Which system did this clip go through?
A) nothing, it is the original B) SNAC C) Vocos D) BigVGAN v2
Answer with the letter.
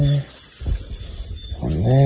A